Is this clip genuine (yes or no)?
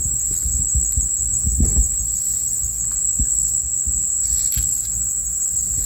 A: yes